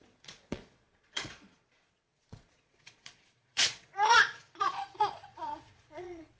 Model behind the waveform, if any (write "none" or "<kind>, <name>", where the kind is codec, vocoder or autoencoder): vocoder, Vocos